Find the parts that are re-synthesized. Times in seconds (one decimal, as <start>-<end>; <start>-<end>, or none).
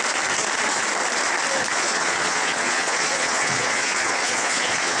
1.7-5.0